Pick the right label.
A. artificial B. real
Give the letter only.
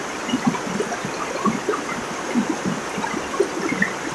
B